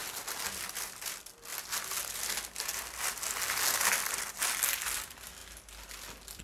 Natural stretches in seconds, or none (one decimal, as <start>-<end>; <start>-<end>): 0.0-6.4

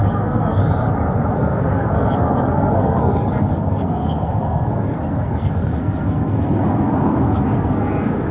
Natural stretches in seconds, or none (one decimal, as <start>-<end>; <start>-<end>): 0.6-1.3

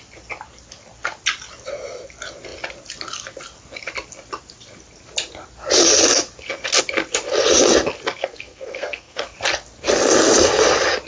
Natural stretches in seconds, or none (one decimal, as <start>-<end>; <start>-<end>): 0.0-8.2; 9.2-11.1